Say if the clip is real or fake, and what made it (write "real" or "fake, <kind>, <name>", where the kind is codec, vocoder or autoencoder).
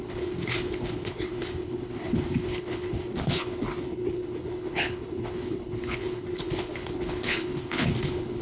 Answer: fake, codec, HILCodec